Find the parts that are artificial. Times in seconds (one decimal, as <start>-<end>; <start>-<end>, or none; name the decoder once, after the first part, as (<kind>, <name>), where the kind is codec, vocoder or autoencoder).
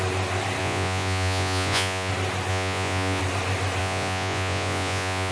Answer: 0.6-2.1 (vocoder, Vocos); 2.5-3.2; 3.8-5.3